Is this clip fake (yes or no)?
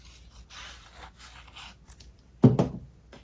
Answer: no